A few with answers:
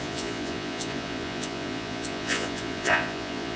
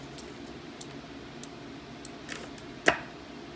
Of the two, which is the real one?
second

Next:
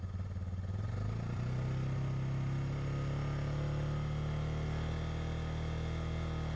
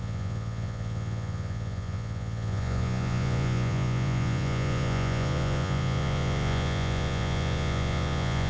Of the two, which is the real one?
first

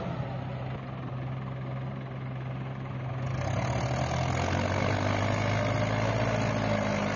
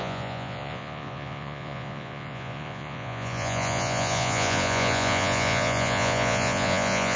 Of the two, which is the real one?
first